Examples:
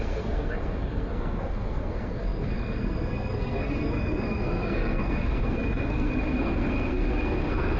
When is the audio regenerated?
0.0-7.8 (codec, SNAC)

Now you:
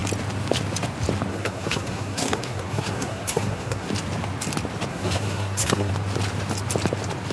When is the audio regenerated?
1.3-3.9 (codec, SNAC); 4.9-5.9

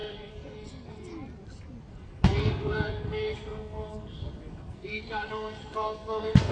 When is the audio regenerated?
0.0-1.1 (codec, SNAC); 1.9-6.5

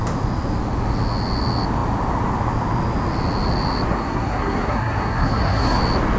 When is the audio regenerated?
3.9-5.8 (codec, SNAC)